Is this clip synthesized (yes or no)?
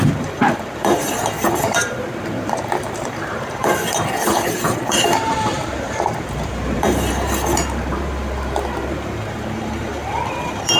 yes